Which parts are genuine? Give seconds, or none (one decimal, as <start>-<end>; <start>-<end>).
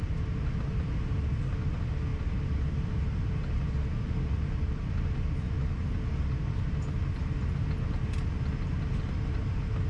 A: 0.0-9.9